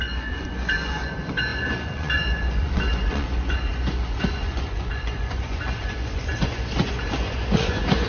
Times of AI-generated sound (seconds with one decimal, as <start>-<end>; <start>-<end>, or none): 0.0-8.1

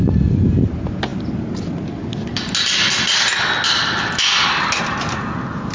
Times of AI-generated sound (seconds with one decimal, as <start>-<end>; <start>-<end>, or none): none

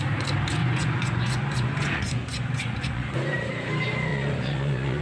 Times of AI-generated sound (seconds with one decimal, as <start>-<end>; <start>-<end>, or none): 0.6-3.5; 4.1-5.0

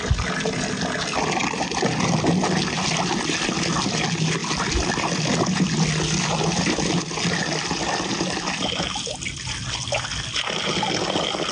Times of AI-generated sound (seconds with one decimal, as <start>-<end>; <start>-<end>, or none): none